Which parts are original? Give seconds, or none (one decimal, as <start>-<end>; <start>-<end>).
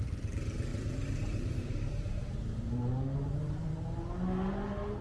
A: 0.0-0.7; 3.7-5.0